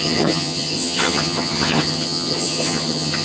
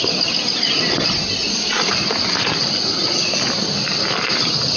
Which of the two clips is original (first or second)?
second